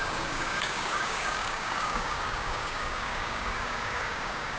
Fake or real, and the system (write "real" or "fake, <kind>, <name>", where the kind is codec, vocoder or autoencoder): fake, codec, DAC